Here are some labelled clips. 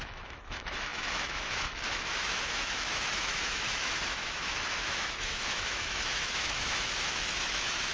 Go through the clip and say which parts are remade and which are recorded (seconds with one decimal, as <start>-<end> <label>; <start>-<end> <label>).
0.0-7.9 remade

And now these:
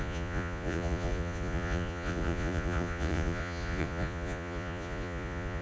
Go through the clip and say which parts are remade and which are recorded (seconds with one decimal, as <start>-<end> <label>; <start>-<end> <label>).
0.0-5.6 remade

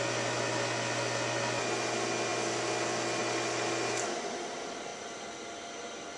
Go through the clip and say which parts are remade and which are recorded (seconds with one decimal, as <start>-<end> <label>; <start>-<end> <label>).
0.0-6.2 recorded

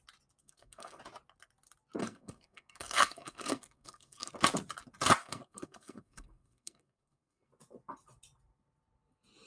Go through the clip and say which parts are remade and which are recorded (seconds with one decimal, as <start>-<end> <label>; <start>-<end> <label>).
0.0-0.4 recorded; 0.4-1.0 remade; 1.0-2.0 recorded; 2.0-4.3 remade; 4.3-5.2 recorded; 5.2-7.5 remade; 7.5-9.5 recorded

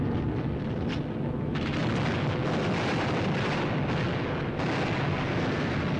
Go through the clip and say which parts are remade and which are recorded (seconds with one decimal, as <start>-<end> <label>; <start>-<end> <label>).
0.0-6.0 recorded

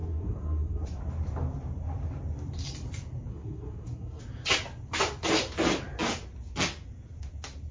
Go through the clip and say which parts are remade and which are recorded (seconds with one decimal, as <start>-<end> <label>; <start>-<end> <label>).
0.0-1.0 remade; 1.0-3.3 recorded; 3.3-4.2 remade; 4.2-7.7 recorded